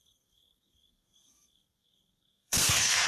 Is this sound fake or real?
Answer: fake